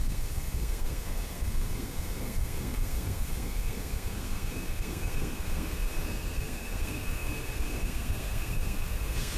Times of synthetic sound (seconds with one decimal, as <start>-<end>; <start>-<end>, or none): 0.0-9.4